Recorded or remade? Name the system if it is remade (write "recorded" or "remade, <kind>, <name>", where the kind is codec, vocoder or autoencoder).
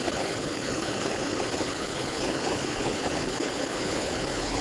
remade, codec, HILCodec